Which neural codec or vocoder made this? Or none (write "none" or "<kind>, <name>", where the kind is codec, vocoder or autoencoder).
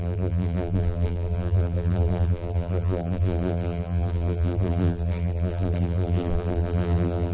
vocoder, BigVGAN v2